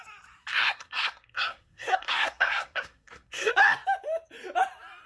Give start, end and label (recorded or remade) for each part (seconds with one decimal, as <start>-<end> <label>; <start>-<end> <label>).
0.0-0.5 recorded; 0.5-3.5 remade; 3.5-5.1 recorded